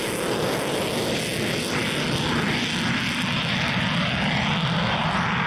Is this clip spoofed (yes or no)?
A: no